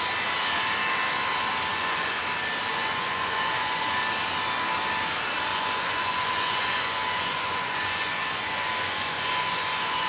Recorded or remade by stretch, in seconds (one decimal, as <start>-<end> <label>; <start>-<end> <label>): 0.0-1.7 recorded; 1.7-2.2 remade; 2.2-2.7 recorded; 2.7-4.0 remade; 4.0-5.5 recorded; 5.5-10.1 remade